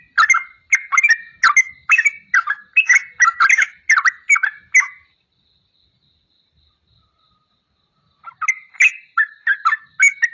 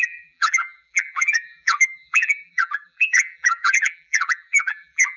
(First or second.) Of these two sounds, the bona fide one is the first